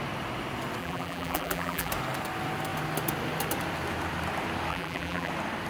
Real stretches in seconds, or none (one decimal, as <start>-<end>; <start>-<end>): 0.0-0.8; 1.9-4.7; 5.3-5.7

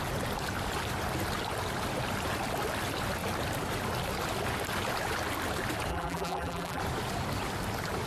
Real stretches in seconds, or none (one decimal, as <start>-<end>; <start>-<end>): 0.0-5.9; 6.8-8.1